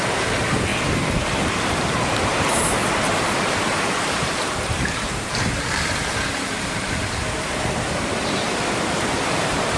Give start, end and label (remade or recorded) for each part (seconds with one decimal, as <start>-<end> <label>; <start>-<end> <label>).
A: 0.0-0.7 remade; 0.7-1.7 recorded; 1.7-9.8 remade